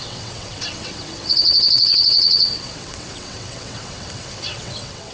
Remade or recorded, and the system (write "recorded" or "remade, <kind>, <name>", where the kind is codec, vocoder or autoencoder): remade, vocoder, WaveNeXt